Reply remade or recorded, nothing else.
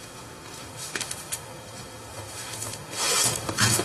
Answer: remade